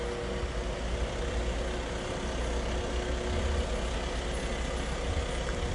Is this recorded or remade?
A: recorded